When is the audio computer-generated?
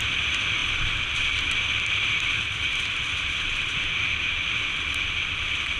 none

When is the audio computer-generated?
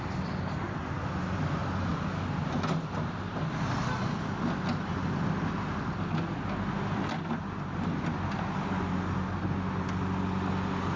none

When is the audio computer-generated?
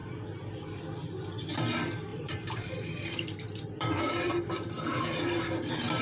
2.1-6.0 (vocoder, BigVGAN v2)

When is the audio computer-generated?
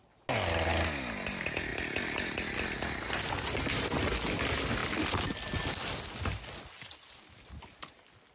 none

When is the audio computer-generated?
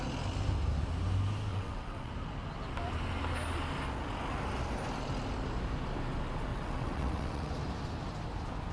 1.5-2.1 (vocoder, WaveNeXt); 6.5-7.5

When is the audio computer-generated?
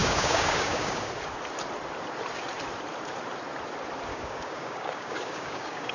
0.0-1.1 (codec, DAC); 4.1-5.9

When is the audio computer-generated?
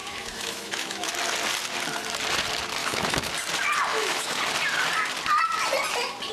0.0-1.1 (autoencoder, DAC-VAE); 2.8-3.3; 3.9-4.4